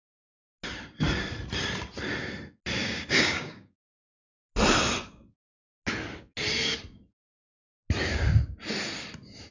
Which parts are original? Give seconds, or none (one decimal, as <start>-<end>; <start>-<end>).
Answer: 0.0-2.8; 4.0-9.5